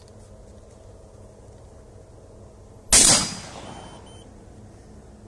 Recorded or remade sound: recorded